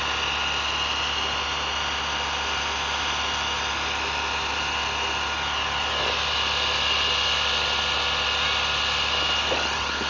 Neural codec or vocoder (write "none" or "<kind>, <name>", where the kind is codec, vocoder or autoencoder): none